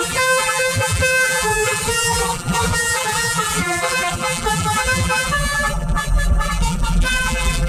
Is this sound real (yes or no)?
no